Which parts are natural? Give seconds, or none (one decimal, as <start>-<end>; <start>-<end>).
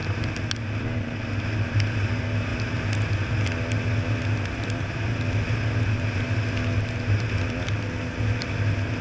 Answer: 0.0-9.0